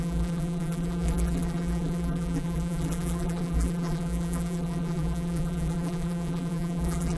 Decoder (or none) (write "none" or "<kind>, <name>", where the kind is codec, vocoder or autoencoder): vocoder, BigVGAN v2